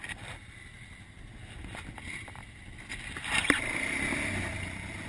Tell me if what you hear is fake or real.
real